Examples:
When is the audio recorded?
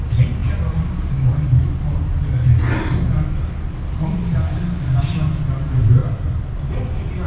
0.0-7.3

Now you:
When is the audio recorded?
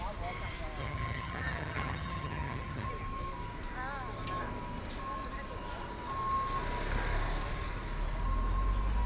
0.0-0.8; 2.9-9.1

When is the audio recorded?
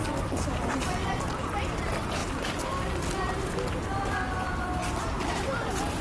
0.0-6.0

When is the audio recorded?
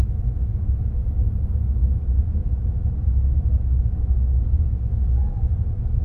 0.0-6.0